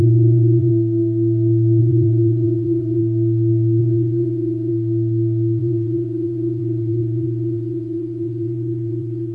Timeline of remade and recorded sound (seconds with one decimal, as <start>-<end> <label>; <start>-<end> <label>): 0.0-0.7 remade; 0.7-1.8 recorded; 1.8-3.0 remade; 3.0-3.8 recorded; 3.8-4.7 remade; 4.7-5.6 recorded; 5.6-9.3 remade